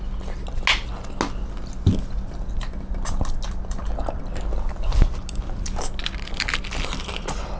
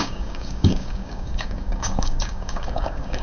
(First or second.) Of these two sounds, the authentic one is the first